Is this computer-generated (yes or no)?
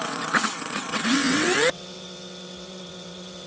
yes